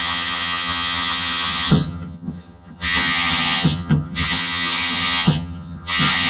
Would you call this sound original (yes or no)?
no